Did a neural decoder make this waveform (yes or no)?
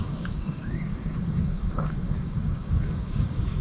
yes